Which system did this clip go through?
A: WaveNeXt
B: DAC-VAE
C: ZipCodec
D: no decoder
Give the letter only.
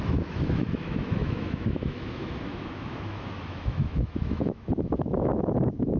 B